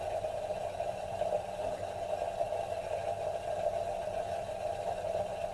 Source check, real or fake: real